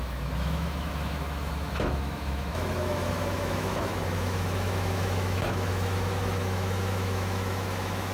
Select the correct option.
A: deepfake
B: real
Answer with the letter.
A